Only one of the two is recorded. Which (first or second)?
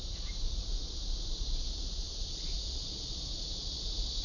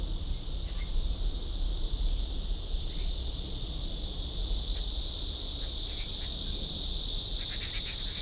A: second